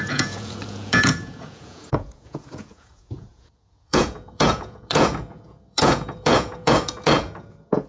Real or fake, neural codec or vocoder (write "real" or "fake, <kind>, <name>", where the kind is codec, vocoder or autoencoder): fake, vocoder, Vocos